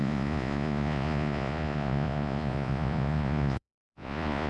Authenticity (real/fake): fake